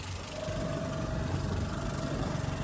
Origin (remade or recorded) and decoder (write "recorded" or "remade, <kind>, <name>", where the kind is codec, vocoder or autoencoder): remade, vocoder, BigVGAN v2